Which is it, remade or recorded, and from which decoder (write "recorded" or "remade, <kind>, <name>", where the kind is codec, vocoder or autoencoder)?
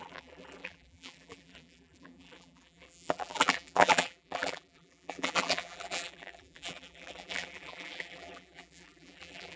remade, vocoder, BigVGAN v2